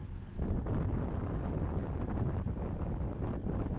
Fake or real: real